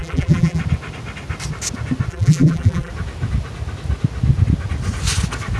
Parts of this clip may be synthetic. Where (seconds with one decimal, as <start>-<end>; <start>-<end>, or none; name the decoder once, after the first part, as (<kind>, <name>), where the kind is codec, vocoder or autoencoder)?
0.0-0.6 (vocoder, BigVGAN v2); 2.1-2.9